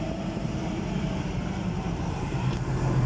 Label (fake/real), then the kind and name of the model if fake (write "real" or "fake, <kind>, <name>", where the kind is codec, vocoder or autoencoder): fake, vocoder, BigVGAN v2